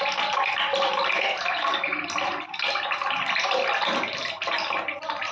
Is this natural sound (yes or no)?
yes